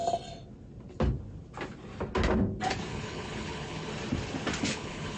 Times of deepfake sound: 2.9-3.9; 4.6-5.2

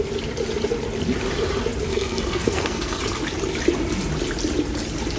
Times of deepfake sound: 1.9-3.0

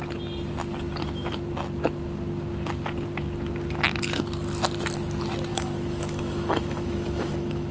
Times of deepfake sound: 5.5-7.7